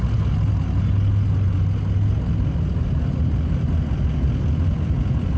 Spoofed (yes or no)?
no